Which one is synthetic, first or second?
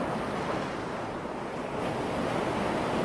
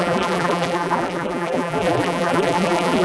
second